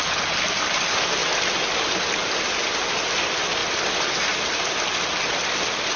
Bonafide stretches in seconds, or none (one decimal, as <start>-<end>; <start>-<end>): 0.0-6.0